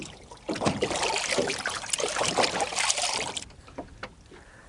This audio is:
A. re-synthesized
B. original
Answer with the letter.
B